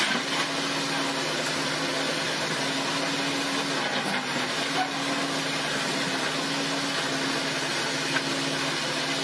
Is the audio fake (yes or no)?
no